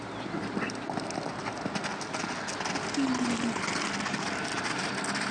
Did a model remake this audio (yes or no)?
no